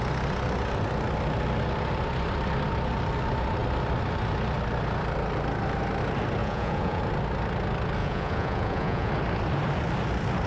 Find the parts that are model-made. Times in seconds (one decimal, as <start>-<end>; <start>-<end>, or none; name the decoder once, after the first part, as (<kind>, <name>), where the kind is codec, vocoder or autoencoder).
6.4-7.0 (vocoder, Vocos); 8.0-9.1